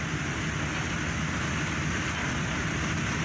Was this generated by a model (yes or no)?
no